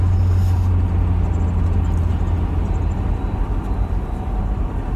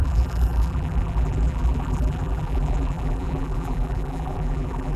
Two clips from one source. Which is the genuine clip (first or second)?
first